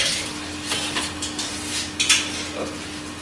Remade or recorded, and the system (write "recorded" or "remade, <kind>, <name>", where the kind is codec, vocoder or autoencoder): recorded